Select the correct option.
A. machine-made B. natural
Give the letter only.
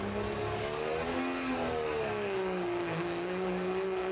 A